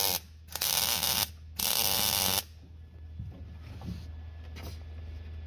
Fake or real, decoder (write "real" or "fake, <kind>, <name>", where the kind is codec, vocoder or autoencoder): real